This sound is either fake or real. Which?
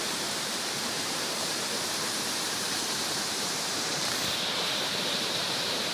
fake